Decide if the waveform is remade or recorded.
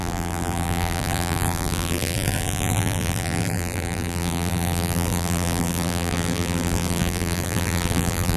remade